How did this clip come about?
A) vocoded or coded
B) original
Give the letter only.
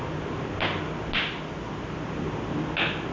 B